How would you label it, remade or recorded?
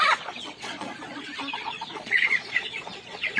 remade